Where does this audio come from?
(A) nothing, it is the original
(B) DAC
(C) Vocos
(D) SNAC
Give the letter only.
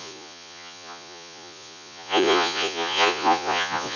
C